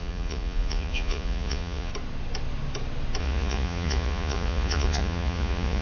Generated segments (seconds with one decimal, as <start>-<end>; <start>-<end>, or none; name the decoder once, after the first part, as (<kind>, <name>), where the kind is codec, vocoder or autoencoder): 0.0-1.9 (vocoder, Vocos); 3.2-5.8